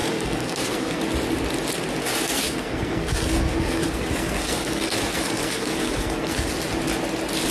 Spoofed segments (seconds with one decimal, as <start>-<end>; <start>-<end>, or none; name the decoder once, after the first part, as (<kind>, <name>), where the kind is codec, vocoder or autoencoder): 0.0-1.0 (codec, SNAC); 2.0-6.5